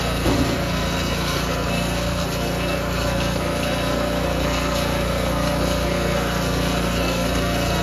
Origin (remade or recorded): remade